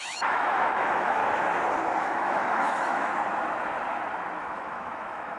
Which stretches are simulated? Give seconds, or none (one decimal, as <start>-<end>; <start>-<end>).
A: 0.0-1.2; 2.0-3.1; 4.4-5.4